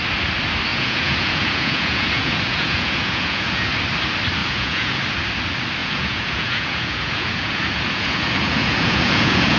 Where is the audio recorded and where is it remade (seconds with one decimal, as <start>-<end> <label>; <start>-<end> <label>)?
0.0-0.7 recorded; 0.7-3.7 remade; 3.7-4.4 recorded; 4.4-5.0 remade; 5.0-5.8 recorded; 5.8-9.6 remade